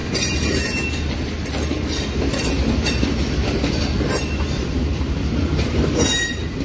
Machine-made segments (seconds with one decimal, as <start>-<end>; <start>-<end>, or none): 5.4-6.6